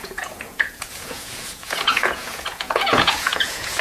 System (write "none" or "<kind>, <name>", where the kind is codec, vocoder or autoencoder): vocoder, Vocos